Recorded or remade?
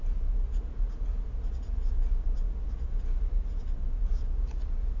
recorded